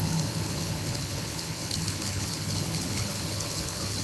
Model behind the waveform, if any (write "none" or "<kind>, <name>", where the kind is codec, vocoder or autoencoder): codec, HILCodec